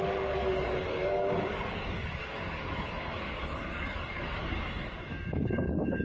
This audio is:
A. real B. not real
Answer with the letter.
B